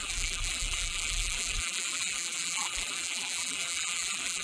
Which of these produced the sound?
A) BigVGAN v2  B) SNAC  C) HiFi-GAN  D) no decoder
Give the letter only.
A